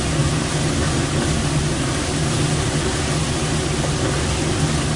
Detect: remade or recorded recorded